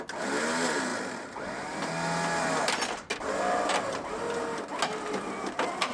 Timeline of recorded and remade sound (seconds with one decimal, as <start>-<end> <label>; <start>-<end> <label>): 0.0-5.9 recorded